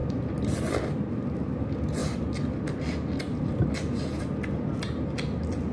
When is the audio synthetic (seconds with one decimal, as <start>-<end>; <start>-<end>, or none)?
none